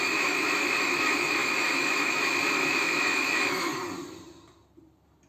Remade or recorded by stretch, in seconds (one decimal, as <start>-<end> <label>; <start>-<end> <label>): 0.0-3.7 remade; 3.7-5.3 recorded